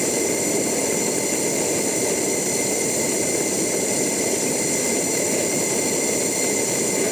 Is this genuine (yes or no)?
yes